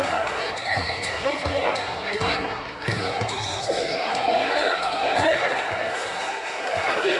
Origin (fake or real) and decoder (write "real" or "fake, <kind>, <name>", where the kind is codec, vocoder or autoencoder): fake, codec, SNAC